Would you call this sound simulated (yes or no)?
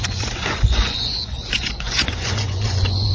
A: yes